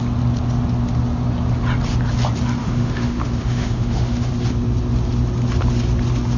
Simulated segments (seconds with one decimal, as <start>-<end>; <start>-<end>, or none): 2.6-4.3